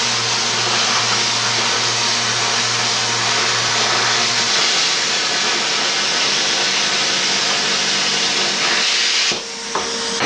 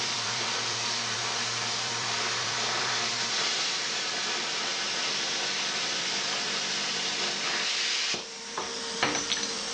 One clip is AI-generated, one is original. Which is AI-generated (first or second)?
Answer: second